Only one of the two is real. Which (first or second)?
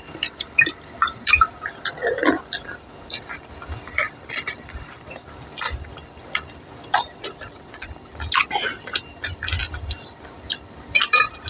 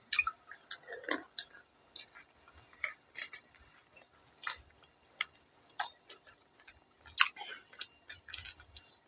second